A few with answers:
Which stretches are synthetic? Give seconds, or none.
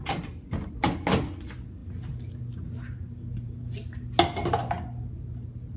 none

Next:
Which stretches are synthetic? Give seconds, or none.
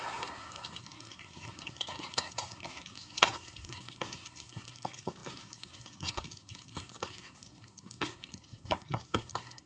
0.0-9.7 (codec, SNAC)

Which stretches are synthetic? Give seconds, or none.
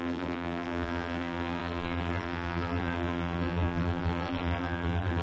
0.0-5.2 (vocoder, BigVGAN v2)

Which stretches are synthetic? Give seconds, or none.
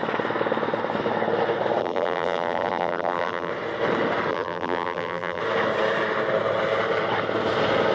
1.8-3.5 (vocoder, BigVGAN v2); 4.3-5.4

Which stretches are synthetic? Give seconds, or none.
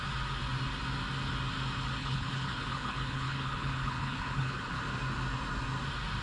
2.0-4.8 (codec, HILCodec)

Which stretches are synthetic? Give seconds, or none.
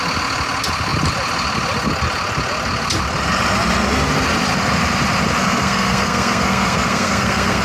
5.4-7.6 (codec, SNAC)